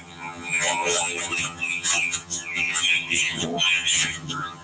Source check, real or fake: fake